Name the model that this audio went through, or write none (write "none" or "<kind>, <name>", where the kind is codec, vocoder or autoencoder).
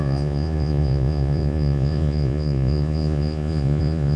vocoder, Vocos